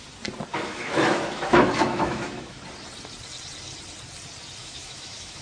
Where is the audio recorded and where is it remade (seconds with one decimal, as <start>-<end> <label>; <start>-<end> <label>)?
0.0-0.5 recorded; 0.5-2.6 remade; 2.6-4.6 recorded; 4.6-5.4 remade